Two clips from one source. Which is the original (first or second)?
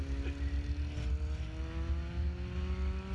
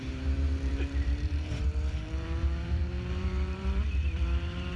first